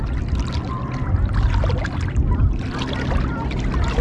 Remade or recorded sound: recorded